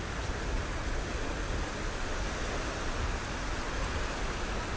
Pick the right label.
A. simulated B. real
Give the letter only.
B